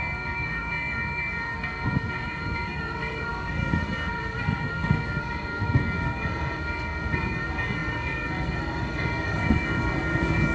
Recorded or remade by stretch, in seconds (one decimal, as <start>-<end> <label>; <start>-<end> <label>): 0.0-10.5 remade